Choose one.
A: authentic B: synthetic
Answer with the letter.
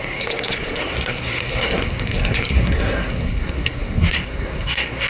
B